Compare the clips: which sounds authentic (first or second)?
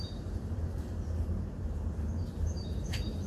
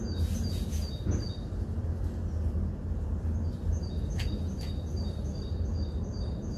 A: second